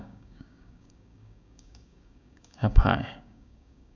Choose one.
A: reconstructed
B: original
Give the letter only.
A